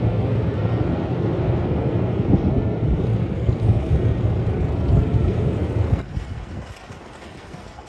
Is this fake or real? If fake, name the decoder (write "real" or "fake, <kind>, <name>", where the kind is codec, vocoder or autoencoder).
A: fake, codec, SNAC